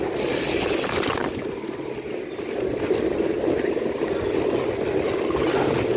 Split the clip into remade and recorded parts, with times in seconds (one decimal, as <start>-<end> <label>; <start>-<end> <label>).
0.0-6.0 recorded

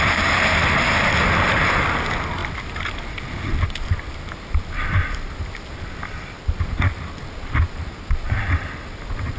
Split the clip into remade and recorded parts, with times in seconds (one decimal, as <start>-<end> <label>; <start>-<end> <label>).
0.0-9.4 recorded